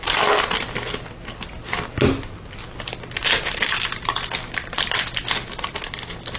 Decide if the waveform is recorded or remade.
recorded